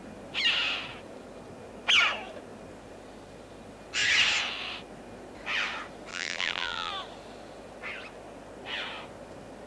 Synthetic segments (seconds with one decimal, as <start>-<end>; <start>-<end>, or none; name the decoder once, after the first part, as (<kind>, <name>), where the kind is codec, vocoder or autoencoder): 6.1-6.9 (vocoder, BigVGAN v2)